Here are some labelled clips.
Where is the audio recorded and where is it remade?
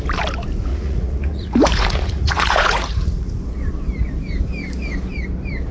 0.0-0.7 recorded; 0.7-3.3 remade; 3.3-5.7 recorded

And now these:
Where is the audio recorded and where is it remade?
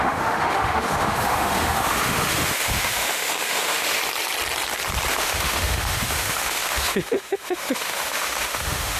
0.0-4.0 remade; 4.0-5.1 recorded; 5.1-9.0 remade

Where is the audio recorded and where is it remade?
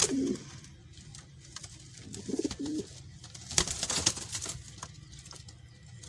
0.0-6.1 recorded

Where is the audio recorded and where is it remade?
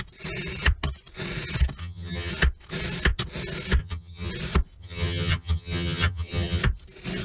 0.0-1.8 recorded; 1.8-2.3 remade; 2.3-3.8 recorded; 3.8-4.3 remade; 4.3-4.8 recorded; 4.8-6.6 remade; 6.6-7.2 recorded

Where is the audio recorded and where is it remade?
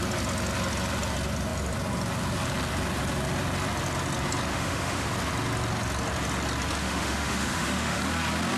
0.0-4.5 recorded; 4.5-5.1 remade; 5.1-6.8 recorded; 6.8-8.0 remade; 8.0-8.6 recorded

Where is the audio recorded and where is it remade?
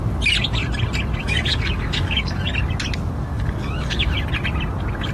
0.0-1.2 recorded; 1.2-2.5 remade; 2.5-3.3 recorded; 3.3-4.1 remade; 4.1-5.1 recorded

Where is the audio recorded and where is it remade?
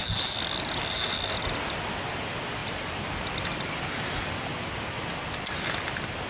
0.0-6.3 recorded